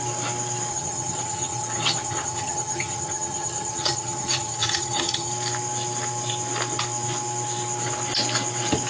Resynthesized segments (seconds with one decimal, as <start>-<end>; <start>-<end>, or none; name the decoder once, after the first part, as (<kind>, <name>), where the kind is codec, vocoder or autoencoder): 0.7-5.3 (vocoder, HiFi-GAN)